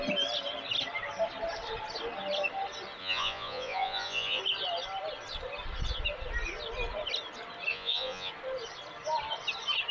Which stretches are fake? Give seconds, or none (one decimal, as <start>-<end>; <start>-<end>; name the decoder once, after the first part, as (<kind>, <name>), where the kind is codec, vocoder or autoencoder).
3.0-4.4 (vocoder, Vocos); 7.7-8.3